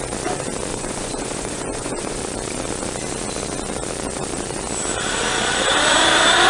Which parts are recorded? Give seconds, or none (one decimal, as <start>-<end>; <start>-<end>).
0.0-0.7; 2.2-6.5